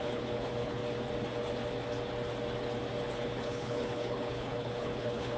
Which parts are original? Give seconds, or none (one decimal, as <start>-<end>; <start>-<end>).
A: 0.8-3.1